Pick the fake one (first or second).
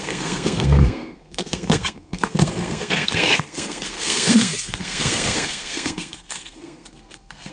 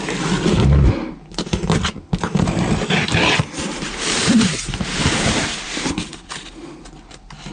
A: first